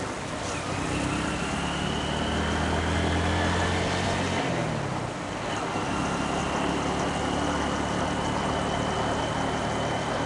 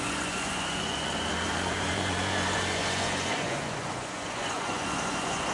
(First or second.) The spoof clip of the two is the second